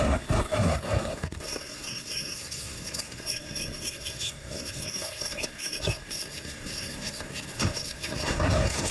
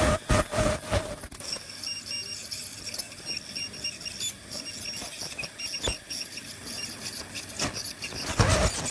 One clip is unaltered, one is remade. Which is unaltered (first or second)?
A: second